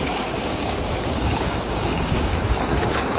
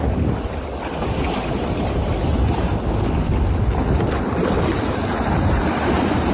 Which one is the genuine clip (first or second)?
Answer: second